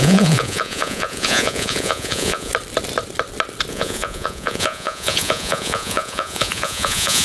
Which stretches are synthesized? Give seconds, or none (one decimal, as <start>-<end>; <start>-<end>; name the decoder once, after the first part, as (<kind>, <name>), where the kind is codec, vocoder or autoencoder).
0.0-2.5 (vocoder, Vocos); 3.7-7.2